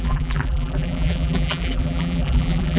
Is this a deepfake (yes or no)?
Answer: yes